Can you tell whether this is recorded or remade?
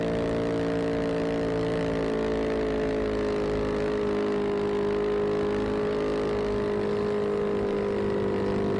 recorded